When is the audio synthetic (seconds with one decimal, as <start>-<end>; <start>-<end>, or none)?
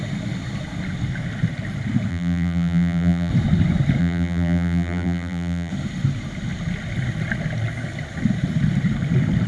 2.1-3.3; 4.0-5.7